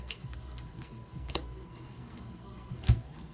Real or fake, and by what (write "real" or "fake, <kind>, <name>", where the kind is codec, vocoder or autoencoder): fake, codec, SNAC